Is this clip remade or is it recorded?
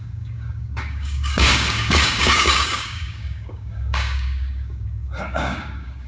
remade